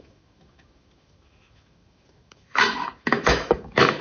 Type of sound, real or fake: fake